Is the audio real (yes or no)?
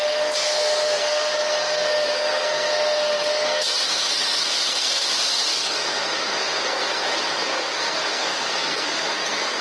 no